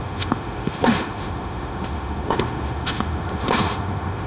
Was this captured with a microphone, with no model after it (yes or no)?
no